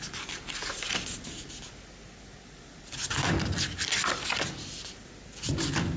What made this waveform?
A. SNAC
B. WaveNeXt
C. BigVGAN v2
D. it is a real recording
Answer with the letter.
D